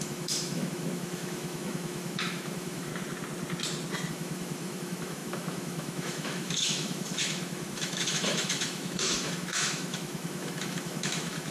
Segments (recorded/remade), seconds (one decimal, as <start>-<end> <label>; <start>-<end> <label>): 0.0-2.9 remade; 2.9-4.1 recorded; 4.1-11.5 remade